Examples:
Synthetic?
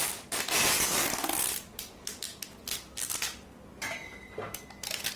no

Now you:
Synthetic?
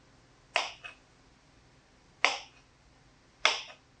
no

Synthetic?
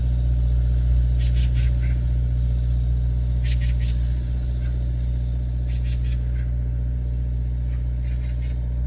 no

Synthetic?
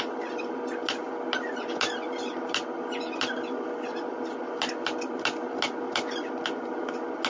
no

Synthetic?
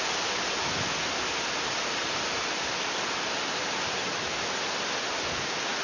no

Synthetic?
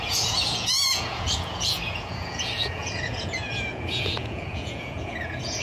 yes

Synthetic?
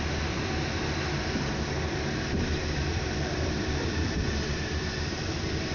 yes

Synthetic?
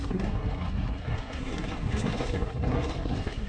yes